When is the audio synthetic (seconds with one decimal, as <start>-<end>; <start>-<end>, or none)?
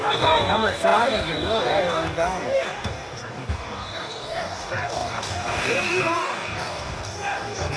0.0-7.8